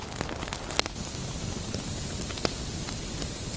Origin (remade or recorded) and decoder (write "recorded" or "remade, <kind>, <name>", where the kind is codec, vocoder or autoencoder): recorded